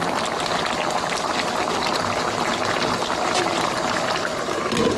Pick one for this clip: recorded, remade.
recorded